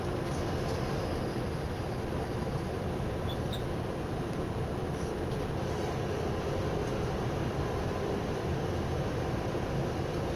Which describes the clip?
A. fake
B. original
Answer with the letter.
B